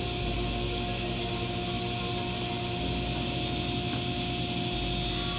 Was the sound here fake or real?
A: real